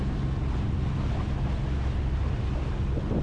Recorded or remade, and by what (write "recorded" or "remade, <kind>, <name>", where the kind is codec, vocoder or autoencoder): recorded